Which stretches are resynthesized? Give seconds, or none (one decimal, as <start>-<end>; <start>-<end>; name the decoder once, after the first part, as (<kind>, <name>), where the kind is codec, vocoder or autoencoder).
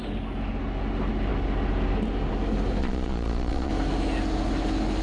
2.8-3.7 (vocoder, Vocos)